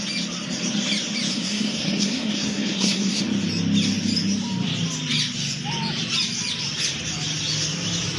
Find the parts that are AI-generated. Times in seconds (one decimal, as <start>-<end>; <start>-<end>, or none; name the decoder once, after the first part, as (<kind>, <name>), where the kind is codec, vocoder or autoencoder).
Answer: 1.3-3.2 (codec, SNAC)